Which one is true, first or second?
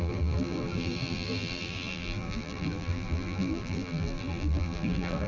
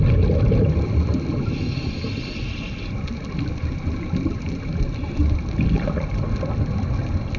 second